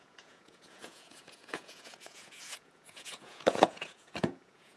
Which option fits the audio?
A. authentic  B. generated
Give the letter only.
B